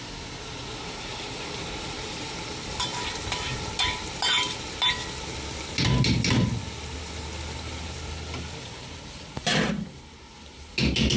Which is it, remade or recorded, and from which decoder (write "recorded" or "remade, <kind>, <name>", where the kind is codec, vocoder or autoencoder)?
recorded